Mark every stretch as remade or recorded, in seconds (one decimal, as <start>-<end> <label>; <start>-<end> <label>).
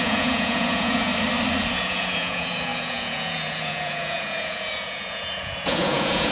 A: 0.0-1.1 remade; 1.1-1.7 recorded; 1.7-6.3 remade